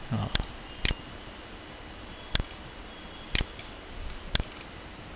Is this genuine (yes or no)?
yes